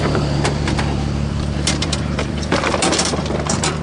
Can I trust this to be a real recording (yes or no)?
no